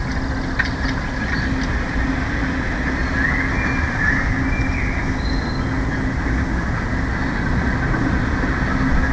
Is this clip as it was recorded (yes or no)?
yes